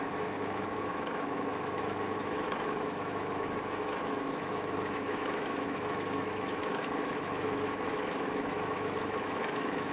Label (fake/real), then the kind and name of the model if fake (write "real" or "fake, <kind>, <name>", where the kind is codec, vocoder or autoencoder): fake, autoencoder, DAC-VAE